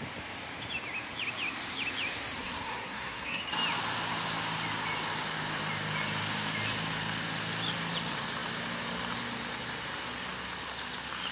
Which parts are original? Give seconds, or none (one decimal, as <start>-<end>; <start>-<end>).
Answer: 0.0-2.4; 3.4-11.3